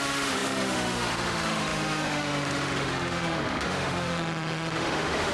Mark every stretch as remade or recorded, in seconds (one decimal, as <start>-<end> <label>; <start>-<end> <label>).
0.0-5.3 remade